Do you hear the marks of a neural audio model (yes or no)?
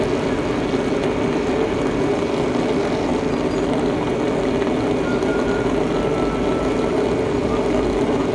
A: no